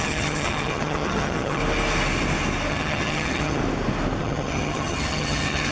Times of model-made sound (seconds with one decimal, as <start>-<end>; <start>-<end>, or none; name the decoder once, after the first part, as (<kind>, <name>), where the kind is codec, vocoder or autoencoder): 0.0-1.6 (vocoder, HiFi-GAN); 2.7-3.6; 4.2-5.7